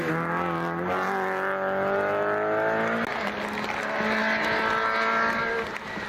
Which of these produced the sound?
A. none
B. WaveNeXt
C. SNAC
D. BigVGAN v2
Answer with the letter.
A